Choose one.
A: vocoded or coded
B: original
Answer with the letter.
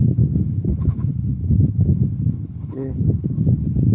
A